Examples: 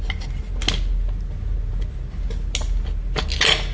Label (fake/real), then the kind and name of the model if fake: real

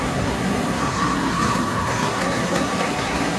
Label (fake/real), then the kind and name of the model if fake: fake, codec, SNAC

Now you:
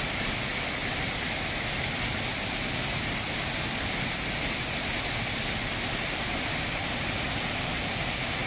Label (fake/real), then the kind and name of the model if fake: real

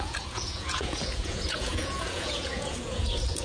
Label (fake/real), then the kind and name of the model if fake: fake, vocoder, Vocos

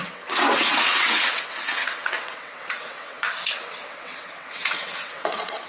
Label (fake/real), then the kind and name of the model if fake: fake, vocoder, WaveNeXt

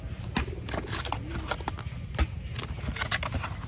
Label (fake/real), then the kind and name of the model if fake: real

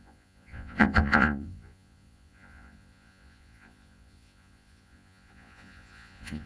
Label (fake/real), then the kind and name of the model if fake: fake, vocoder, Vocos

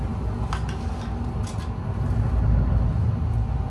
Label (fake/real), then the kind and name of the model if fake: real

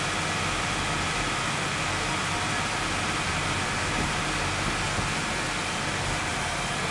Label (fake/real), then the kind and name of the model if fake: real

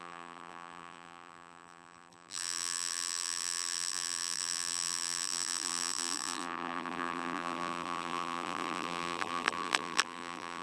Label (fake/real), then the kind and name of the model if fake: fake, vocoder, BigVGAN v2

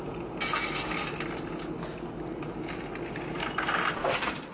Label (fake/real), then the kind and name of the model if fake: real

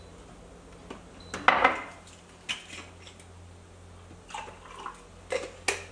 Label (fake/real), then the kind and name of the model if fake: real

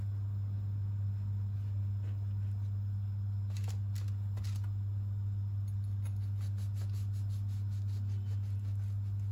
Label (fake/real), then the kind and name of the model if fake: real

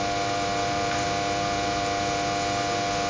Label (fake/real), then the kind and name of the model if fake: real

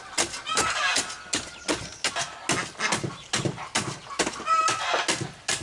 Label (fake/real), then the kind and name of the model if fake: real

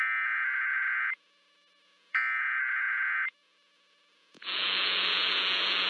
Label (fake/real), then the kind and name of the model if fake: fake, vocoder, Vocos